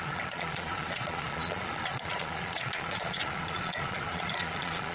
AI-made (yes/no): yes